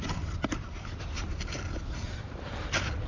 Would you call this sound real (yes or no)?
yes